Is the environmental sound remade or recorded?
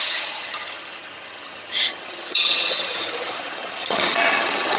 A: remade